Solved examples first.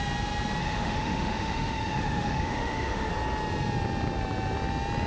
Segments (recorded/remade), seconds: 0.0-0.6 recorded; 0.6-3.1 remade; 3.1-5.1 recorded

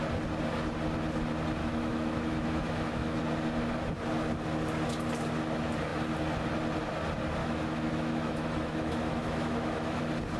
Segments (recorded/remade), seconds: 0.0-1.6 recorded; 1.6-3.2 remade; 3.2-7.4 recorded; 7.4-10.0 remade; 10.0-10.4 recorded

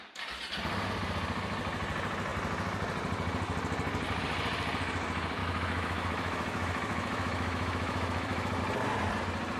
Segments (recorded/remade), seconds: 0.0-5.4 recorded; 5.4-8.6 remade; 8.6-9.6 recorded

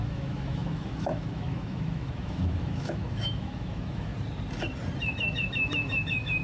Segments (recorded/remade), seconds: 0.0-4.1 remade; 4.1-5.0 recorded; 5.0-6.4 remade

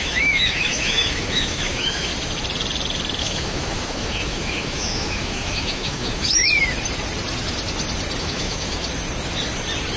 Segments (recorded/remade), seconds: 0.0-2.1 remade; 2.1-3.2 recorded; 3.2-6.4 remade; 6.4-8.2 recorded; 8.2-8.8 remade; 8.8-10.0 recorded